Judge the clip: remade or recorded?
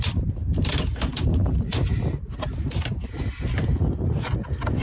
recorded